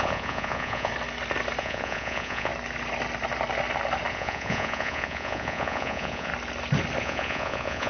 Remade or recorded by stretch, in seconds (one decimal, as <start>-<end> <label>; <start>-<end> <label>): 0.0-0.9 remade; 0.9-1.6 recorded; 1.6-2.5 remade; 2.5-4.1 recorded; 4.1-6.3 remade; 6.3-7.0 recorded; 7.0-7.9 remade

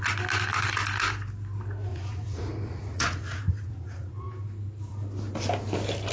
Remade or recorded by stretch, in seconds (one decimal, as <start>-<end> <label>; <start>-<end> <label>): 0.0-1.9 recorded; 1.9-4.3 remade; 4.3-6.1 recorded

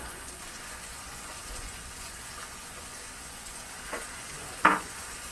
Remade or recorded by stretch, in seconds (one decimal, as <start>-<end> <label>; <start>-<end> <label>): 0.0-5.3 remade

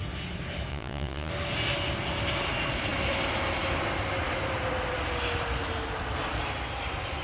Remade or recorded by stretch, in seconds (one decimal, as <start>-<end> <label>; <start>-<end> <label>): 0.0-0.7 recorded; 0.7-1.3 remade; 1.3-7.2 recorded